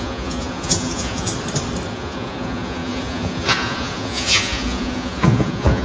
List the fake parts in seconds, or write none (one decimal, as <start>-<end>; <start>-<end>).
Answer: 0.0-1.3; 1.9-5.8